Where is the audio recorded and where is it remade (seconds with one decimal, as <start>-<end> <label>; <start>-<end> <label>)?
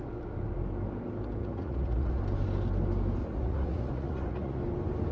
0.0-1.4 recorded; 1.4-2.2 remade; 2.2-3.2 recorded; 3.2-4.6 remade; 4.6-5.1 recorded